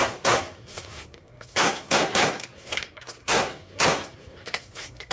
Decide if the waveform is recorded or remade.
remade